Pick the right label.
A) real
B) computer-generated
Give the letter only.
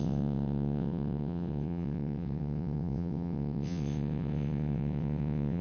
B